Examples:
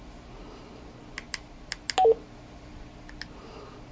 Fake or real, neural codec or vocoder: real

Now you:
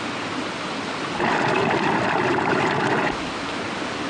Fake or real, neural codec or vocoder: real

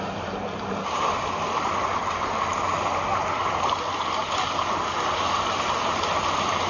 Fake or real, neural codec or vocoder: fake, vocoder, BigVGAN v2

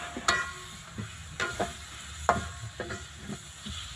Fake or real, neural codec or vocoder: real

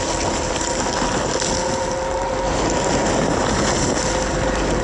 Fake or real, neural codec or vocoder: real